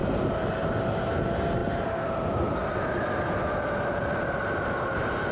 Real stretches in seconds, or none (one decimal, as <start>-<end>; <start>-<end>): 0.0-5.3